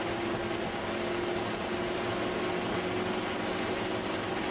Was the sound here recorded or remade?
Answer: recorded